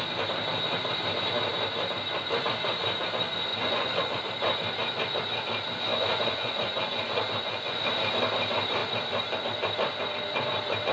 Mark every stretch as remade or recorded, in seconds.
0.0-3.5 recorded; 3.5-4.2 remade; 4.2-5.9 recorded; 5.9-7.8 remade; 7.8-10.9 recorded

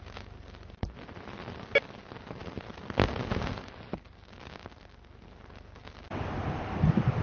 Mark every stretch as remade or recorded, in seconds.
0.0-7.2 recorded

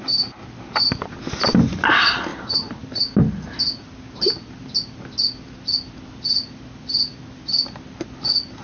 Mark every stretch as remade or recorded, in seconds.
0.0-8.6 recorded

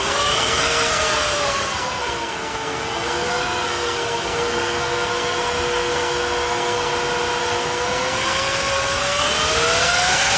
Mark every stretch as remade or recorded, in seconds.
0.0-6.9 remade; 6.9-7.4 recorded; 7.4-9.3 remade; 9.3-9.8 recorded; 9.8-10.4 remade

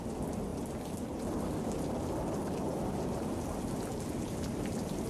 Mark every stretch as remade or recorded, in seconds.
0.0-5.1 recorded